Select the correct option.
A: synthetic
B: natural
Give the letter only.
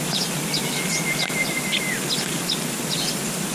B